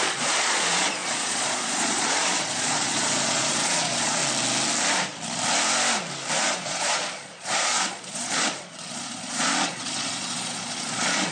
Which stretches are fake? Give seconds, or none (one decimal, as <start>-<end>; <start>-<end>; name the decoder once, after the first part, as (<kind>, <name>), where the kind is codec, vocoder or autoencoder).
0.0-4.2 (vocoder, Vocos); 6.4-11.3